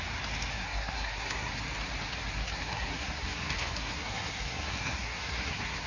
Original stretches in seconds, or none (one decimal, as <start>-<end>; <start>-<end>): 0.0-0.5; 1.5-2.4